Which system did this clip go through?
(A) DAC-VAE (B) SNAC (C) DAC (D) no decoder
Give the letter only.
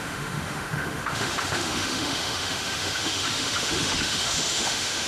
A